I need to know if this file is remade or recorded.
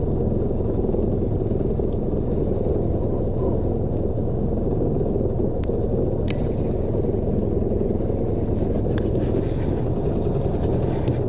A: recorded